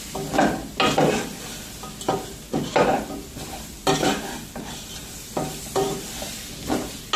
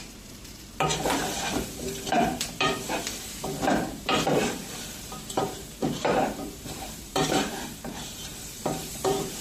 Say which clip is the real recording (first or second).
first